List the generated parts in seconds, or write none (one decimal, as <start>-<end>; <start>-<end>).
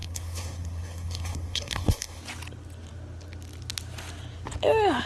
0.0-2.2